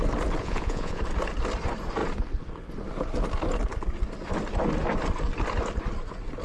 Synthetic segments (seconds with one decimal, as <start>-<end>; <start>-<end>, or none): 0.4-1.0